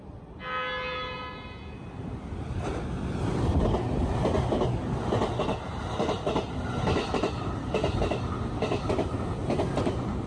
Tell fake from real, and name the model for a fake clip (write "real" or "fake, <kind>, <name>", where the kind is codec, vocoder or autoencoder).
real